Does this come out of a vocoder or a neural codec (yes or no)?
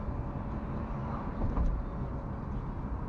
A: no